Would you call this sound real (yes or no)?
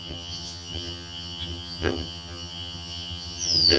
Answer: no